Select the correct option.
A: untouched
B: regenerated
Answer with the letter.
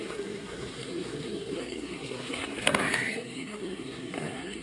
B